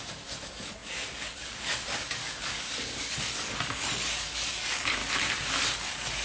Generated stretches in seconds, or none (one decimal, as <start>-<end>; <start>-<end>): 0.0-5.0; 5.8-6.2